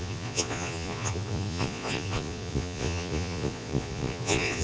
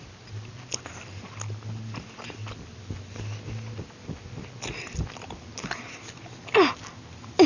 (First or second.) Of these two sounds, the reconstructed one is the first